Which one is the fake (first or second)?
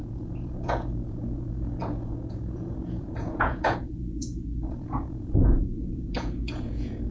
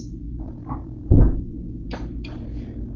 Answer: first